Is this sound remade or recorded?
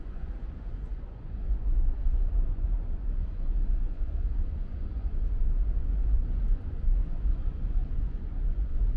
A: remade